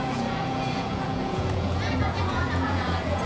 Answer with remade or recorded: remade